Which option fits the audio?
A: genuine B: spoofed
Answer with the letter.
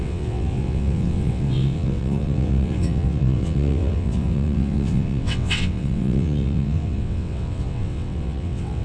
B